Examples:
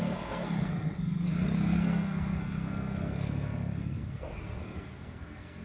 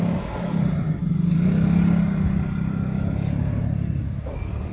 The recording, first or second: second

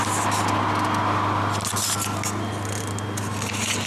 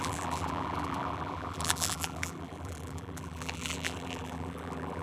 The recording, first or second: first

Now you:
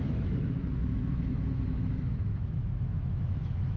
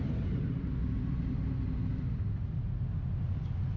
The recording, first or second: second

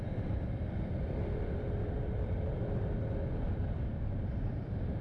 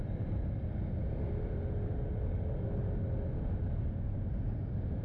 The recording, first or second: second